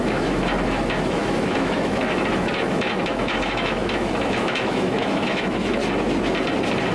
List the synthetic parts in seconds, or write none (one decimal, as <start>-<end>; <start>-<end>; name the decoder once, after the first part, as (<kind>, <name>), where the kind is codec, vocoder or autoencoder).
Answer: 0.0-5.8 (autoencoder, DAC-VAE)